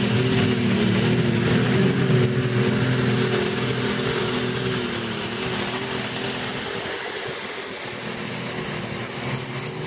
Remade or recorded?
recorded